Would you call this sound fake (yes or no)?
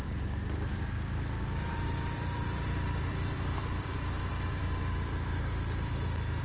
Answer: yes